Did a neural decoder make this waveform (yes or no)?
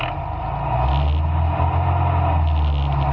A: no